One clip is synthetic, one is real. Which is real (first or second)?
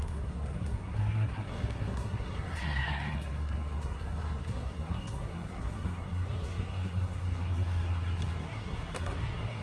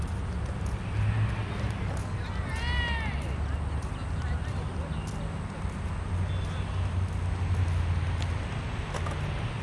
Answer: second